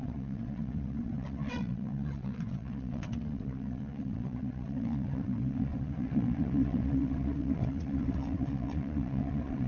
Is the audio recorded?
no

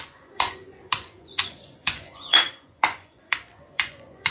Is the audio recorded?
no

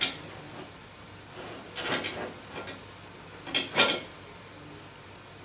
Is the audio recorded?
yes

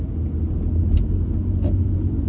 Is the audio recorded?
yes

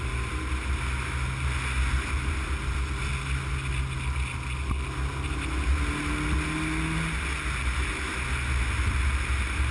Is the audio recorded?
yes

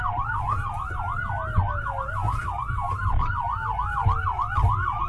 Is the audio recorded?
yes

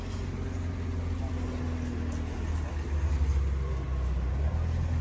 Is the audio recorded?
yes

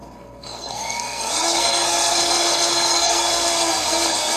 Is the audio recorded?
no